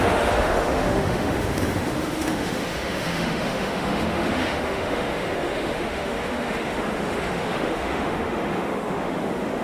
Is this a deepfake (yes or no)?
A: yes